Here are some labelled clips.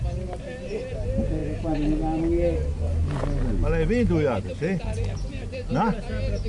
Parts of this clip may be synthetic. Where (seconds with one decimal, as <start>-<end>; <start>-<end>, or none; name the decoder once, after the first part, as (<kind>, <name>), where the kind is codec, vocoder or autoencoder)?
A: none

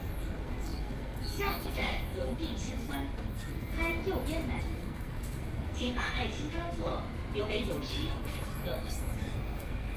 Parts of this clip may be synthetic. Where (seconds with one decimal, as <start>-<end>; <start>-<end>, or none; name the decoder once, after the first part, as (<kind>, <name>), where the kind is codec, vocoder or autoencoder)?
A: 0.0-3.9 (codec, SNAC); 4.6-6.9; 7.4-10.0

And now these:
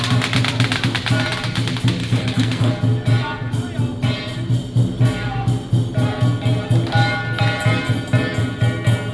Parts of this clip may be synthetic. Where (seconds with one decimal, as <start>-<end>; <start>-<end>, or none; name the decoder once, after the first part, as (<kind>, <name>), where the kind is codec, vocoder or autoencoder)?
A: 2.0-2.7 (codec, SNAC)